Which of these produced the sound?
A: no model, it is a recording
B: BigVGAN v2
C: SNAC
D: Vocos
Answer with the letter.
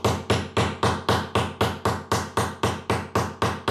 A